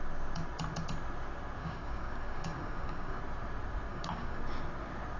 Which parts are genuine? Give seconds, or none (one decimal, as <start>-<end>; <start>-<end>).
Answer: 0.0-1.6; 3.2-3.9; 4.4-5.2